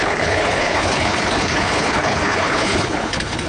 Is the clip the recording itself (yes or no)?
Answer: no